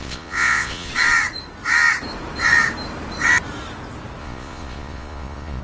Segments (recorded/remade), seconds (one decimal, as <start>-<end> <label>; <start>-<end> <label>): 0.0-0.9 remade; 0.9-4.2 recorded; 4.2-5.6 remade